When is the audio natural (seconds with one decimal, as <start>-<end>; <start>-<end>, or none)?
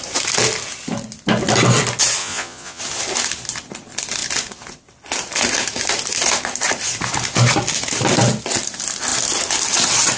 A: 0.0-2.2; 2.8-10.2